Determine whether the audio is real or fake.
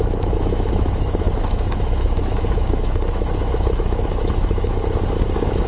fake